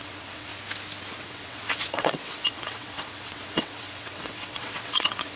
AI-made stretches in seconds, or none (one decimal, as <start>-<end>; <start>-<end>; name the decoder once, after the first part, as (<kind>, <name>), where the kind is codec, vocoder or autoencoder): 0.0-0.5 (vocoder, WaveNeXt); 1.1-5.4